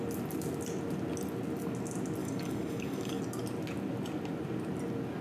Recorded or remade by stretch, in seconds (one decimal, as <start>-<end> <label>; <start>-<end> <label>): 0.0-2.2 recorded; 2.2-3.2 remade; 3.2-5.2 recorded